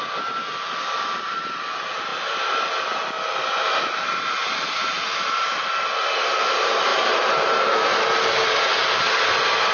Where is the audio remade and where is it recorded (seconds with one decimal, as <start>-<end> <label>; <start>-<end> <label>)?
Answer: 0.0-9.7 recorded